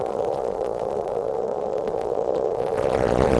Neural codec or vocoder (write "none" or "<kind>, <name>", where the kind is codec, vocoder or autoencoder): vocoder, Vocos